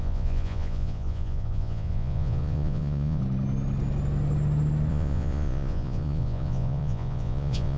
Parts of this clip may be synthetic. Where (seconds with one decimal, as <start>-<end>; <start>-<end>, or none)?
0.0-3.2; 4.9-7.8